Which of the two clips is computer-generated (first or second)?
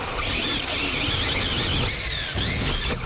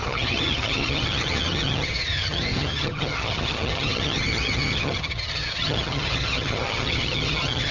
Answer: second